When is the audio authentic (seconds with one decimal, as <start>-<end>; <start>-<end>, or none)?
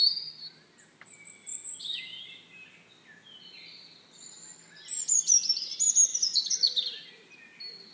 0.0-6.1; 7.3-7.9